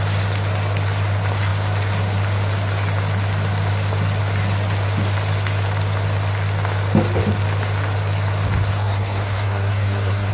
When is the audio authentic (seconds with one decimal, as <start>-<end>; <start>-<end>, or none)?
0.0-8.7